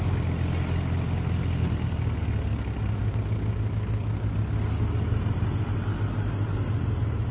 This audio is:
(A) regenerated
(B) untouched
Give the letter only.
B